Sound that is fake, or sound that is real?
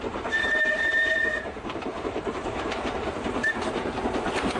fake